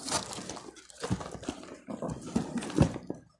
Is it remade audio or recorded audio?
remade